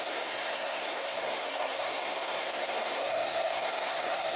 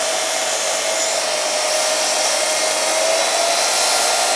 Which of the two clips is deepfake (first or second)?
first